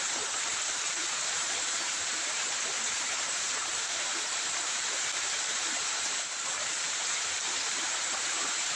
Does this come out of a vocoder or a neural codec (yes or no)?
yes